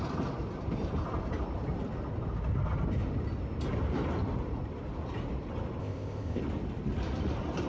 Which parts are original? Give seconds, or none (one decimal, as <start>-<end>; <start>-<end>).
0.0-5.8; 6.4-7.7